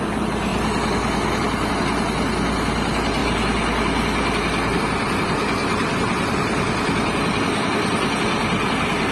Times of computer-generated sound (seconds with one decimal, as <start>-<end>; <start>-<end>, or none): 5.6-7.4